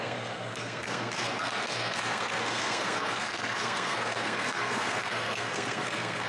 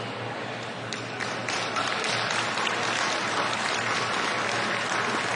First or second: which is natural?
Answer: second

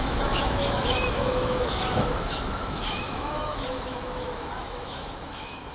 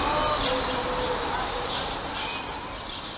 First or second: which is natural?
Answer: second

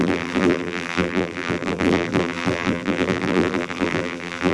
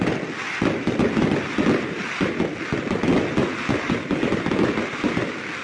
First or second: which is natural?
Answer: second